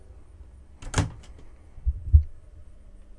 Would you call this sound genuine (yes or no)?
yes